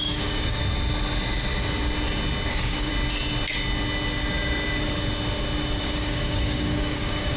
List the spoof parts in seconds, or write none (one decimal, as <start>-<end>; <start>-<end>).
0.0-0.6; 2.5-2.9; 5.8-7.4